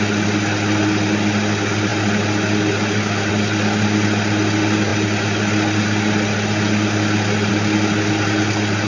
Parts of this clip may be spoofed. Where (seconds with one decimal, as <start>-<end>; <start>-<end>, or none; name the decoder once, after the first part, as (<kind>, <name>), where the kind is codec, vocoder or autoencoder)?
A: none